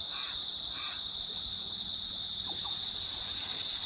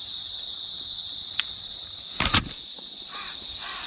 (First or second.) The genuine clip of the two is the second